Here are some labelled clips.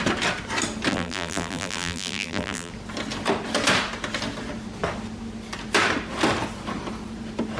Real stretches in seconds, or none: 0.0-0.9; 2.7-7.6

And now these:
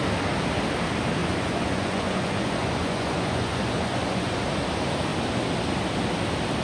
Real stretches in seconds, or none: 0.0-1.2; 4.4-6.6

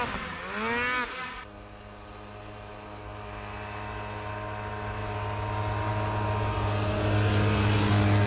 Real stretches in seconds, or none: 0.0-8.3

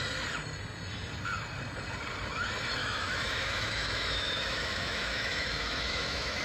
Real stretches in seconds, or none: 0.0-2.8

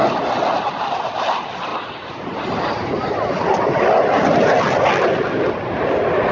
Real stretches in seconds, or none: 0.0-6.3